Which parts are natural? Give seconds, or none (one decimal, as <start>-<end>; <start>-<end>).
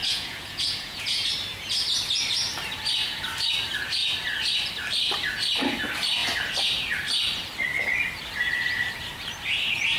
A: 1.3-10.0